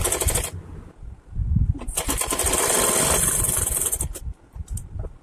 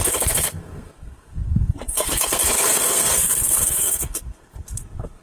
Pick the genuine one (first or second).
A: first